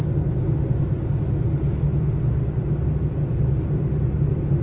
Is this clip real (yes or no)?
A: yes